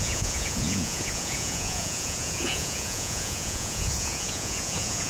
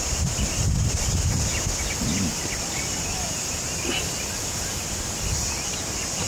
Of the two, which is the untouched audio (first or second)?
second